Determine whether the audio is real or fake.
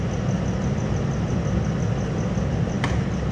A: real